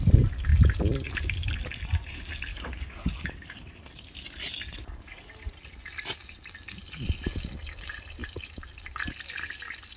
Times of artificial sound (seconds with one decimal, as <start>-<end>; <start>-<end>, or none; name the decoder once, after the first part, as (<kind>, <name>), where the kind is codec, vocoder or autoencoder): 2.5-3.7 (codec, DAC)